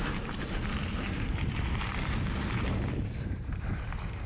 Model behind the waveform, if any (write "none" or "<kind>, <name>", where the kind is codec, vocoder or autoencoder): vocoder, BigVGAN v2